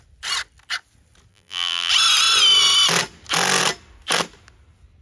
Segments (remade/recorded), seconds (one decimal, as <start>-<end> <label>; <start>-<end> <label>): 0.0-1.3 recorded; 1.3-1.9 remade; 1.9-5.0 recorded